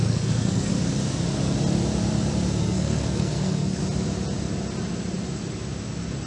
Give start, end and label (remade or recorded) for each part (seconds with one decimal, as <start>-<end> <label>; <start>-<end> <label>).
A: 0.0-0.7 remade; 0.7-2.6 recorded; 2.6-3.8 remade; 3.8-6.3 recorded